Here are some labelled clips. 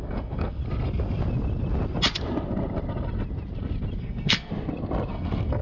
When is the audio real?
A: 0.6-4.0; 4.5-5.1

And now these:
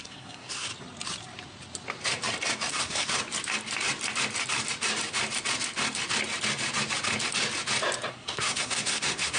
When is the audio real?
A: 0.7-2.7; 3.1-8.1

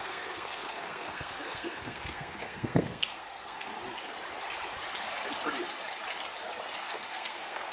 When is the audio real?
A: 3.7-6.8

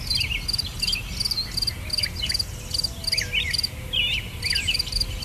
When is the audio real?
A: 0.0-5.2

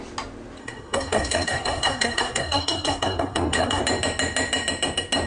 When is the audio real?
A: 0.0-0.6; 3.8-5.3

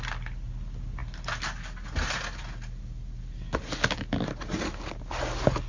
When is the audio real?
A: 0.0-5.7

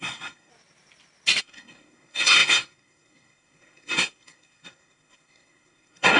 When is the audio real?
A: 0.5-1.4

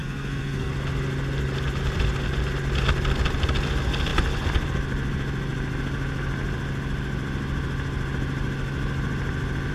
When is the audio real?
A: 0.7-9.7